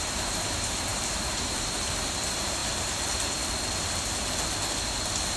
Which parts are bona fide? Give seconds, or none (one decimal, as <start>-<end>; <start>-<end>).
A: 2.6-5.0